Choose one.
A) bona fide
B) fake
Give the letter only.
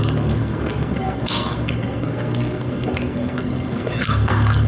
B